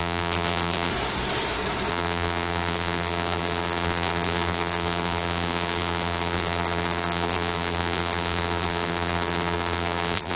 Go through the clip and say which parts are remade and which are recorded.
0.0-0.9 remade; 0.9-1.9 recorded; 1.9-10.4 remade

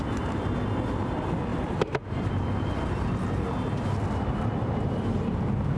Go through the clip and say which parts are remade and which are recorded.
0.0-1.5 recorded; 1.5-2.3 remade; 2.3-5.8 recorded

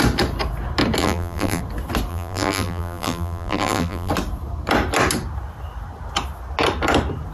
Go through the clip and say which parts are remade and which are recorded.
0.0-1.0 recorded; 1.0-1.6 remade; 1.6-2.1 recorded; 2.1-4.1 remade; 4.1-7.3 recorded

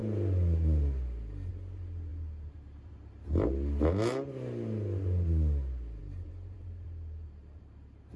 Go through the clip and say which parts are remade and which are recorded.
0.0-6.0 recorded; 6.0-8.2 remade

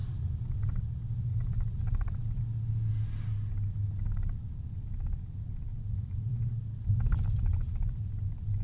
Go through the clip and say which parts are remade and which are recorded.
0.0-0.8 remade; 0.8-1.3 recorded; 1.3-2.4 remade; 2.4-5.7 recorded; 5.7-6.3 remade; 6.3-8.6 recorded

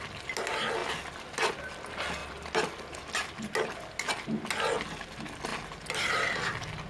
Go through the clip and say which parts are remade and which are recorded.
0.0-2.2 recorded; 2.2-3.3 remade; 3.3-5.5 recorded; 5.5-6.1 remade; 6.1-6.9 recorded

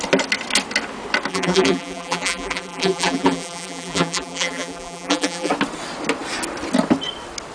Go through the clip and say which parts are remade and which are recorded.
0.0-1.3 recorded; 1.3-5.5 remade; 5.5-7.5 recorded

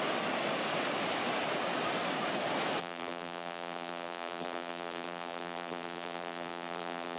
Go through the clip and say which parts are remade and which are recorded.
0.0-2.8 recorded; 2.8-7.2 remade